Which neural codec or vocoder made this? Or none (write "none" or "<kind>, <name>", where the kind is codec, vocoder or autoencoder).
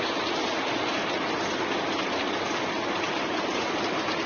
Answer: none